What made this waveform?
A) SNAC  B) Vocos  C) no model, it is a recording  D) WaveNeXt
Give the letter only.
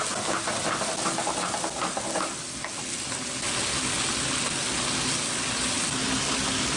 C